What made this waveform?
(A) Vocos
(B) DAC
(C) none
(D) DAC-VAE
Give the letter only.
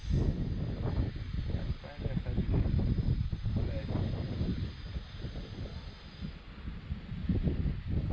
C